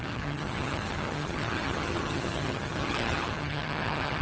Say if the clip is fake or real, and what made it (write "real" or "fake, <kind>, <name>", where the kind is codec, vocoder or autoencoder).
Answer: fake, vocoder, HiFi-GAN